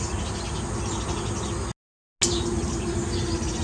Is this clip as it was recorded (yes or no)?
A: yes